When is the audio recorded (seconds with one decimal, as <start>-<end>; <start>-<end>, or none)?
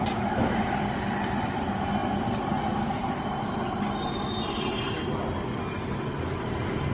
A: 0.0-6.9